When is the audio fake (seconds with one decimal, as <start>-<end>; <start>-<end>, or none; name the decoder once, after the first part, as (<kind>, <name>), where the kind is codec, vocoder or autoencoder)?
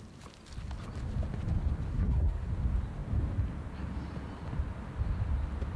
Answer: 1.9-2.5 (codec, SNAC)